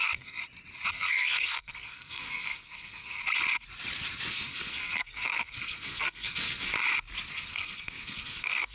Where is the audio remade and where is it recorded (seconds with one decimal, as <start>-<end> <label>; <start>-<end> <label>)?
0.0-0.4 remade; 0.4-0.9 recorded; 0.9-3.2 remade; 3.2-4.3 recorded; 4.3-6.7 remade; 6.7-7.3 recorded; 7.3-8.7 remade